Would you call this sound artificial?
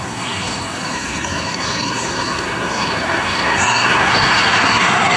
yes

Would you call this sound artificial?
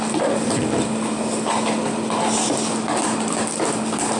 no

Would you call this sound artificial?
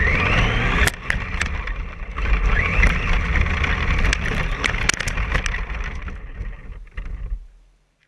no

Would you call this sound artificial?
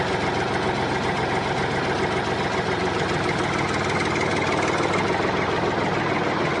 no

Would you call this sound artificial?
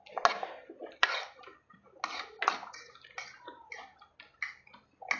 no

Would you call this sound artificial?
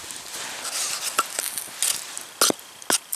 no